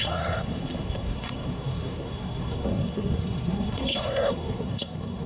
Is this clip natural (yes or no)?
no